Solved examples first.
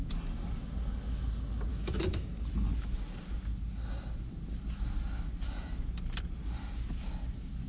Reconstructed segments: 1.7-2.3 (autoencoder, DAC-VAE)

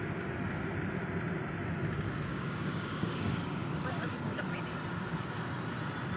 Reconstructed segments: 2.3-4.4 (codec, DAC)

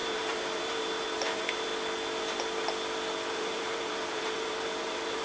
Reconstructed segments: 0.0-1.7 (vocoder, BigVGAN v2); 3.3-5.2

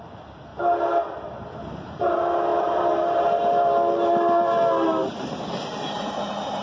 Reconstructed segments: 0.5-2.1 (vocoder, BigVGAN v2); 2.5-5.4

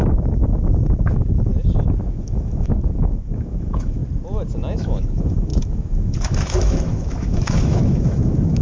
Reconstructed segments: 0.0-1.5 (autoencoder, DAC-VAE); 2.1-4.0; 4.8-8.6

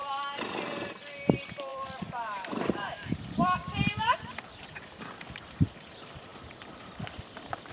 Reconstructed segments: 1.0-7.7 (vocoder, BigVGAN v2)

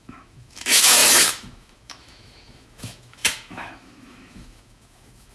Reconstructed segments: 0.0-5.3 (autoencoder, DAC-VAE)

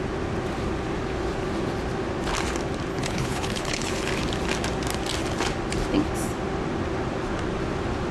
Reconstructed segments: 2.9-4.1 (codec, HILCodec)